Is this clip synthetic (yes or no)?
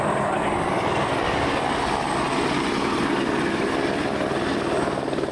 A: no